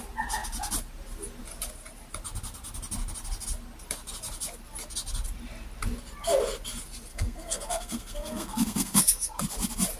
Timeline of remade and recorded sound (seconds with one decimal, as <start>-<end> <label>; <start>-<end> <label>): 0.0-7.1 recorded; 7.1-9.4 remade; 9.4-10.0 recorded